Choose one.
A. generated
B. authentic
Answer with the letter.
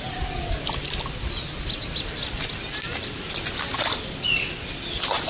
B